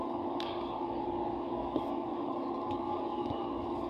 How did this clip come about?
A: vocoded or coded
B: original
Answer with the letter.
A